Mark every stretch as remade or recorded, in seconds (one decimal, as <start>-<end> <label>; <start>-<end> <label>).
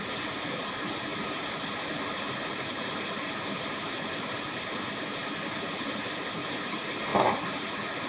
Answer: 0.0-1.1 recorded; 1.1-4.8 remade; 4.8-7.1 recorded; 7.1-8.1 remade